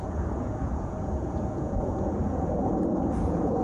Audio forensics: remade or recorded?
remade